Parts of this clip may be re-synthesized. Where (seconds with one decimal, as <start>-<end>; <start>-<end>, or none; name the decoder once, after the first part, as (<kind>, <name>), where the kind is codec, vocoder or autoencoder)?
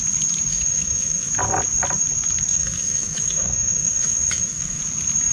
0.5-1.3 (autoencoder, DAC-VAE); 2.5-4.8